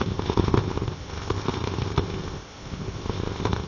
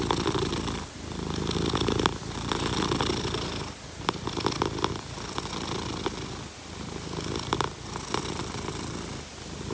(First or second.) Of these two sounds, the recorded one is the second